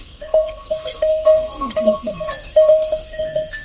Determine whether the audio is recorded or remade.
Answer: remade